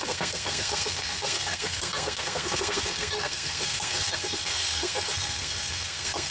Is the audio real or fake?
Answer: fake